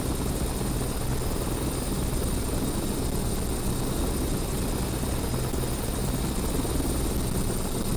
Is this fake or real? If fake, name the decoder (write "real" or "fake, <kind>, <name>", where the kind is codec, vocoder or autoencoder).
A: real